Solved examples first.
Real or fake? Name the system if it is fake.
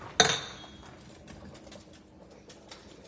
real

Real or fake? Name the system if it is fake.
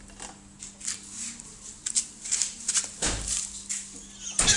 real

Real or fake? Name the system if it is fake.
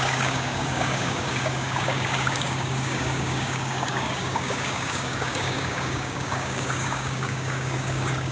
fake, codec, DAC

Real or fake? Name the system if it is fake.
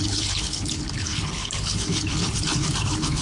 fake, codec, HILCodec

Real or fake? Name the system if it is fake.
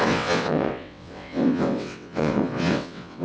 fake, vocoder, WaveNeXt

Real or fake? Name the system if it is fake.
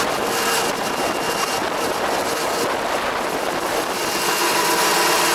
real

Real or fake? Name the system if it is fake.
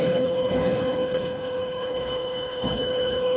fake, codec, HILCodec